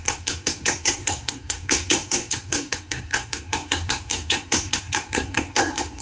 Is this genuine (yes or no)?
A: no